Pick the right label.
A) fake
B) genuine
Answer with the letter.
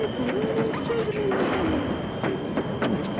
B